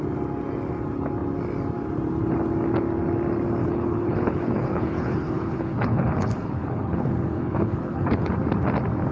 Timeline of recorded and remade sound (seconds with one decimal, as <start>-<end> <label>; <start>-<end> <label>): 0.0-3.6 recorded; 3.6-8.3 remade; 8.3-9.1 recorded